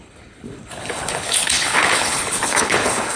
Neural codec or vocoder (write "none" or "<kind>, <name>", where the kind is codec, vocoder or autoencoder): codec, HILCodec